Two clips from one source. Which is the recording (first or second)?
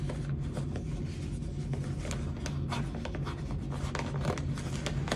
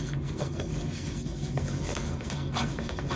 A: first